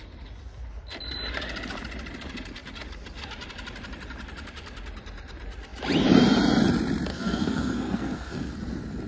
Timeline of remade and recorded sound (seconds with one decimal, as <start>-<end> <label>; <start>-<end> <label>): 0.0-7.1 recorded; 7.1-8.5 remade; 8.5-9.1 recorded